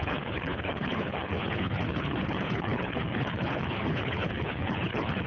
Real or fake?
fake